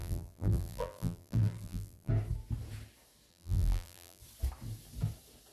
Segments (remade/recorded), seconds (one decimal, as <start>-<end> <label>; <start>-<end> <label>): 0.0-2.1 remade; 2.1-3.3 recorded; 3.3-4.2 remade; 4.2-5.5 recorded

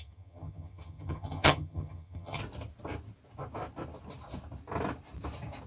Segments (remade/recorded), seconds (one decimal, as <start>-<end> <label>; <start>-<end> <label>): 0.0-2.4 remade; 2.4-5.7 recorded

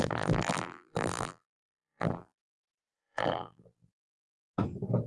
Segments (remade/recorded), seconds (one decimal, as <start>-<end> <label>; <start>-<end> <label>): 0.0-4.0 remade; 4.0-5.1 recorded

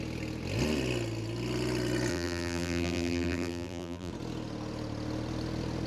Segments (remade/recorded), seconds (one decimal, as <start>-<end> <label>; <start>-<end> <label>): 0.0-2.1 recorded; 2.1-4.1 remade; 4.1-5.9 recorded

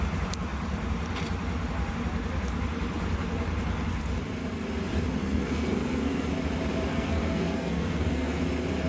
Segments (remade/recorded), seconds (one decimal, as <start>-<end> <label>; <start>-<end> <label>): 0.0-5.2 recorded; 5.2-6.3 remade; 6.3-6.9 recorded; 6.9-8.4 remade; 8.4-8.9 recorded